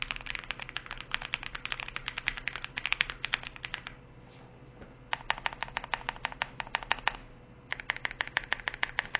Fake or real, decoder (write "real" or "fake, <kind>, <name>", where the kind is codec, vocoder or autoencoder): real